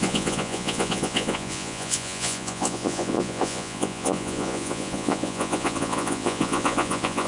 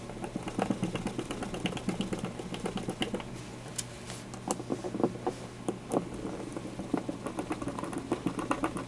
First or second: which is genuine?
second